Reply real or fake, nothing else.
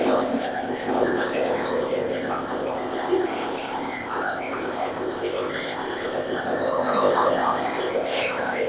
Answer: fake